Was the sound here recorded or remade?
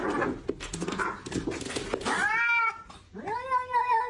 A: recorded